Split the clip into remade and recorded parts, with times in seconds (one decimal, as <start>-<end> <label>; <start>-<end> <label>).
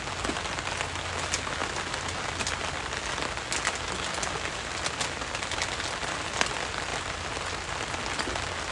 0.0-8.7 recorded